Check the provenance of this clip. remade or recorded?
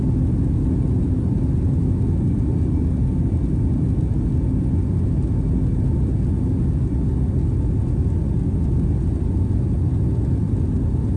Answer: recorded